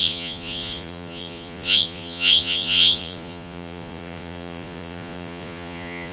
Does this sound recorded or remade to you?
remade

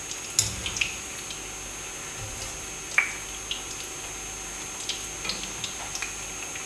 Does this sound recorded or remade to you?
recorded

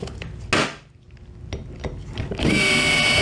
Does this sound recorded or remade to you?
recorded